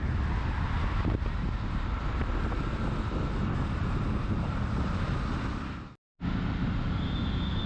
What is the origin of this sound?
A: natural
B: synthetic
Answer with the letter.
A